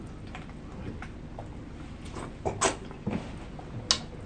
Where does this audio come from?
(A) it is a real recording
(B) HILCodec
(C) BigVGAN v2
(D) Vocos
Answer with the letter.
A